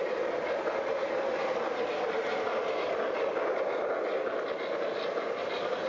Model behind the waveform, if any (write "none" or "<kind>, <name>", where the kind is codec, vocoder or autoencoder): none